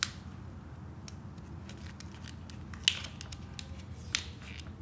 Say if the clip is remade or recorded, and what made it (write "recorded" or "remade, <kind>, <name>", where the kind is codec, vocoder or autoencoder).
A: recorded